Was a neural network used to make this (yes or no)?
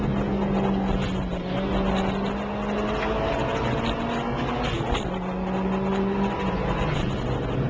no